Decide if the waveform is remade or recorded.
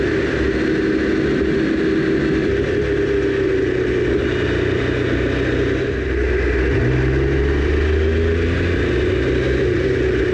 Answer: recorded